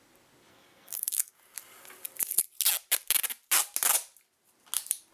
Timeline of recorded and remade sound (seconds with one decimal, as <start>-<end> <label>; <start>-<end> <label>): 0.0-0.5 recorded; 0.5-1.3 remade; 1.3-5.1 recorded